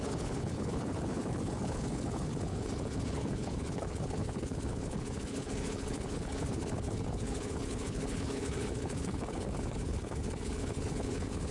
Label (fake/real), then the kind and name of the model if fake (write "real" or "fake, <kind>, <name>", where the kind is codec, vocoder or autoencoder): fake, codec, HILCodec